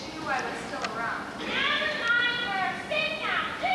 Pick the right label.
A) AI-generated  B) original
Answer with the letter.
B